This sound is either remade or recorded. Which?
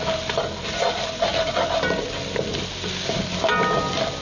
recorded